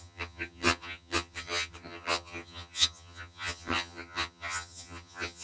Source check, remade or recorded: remade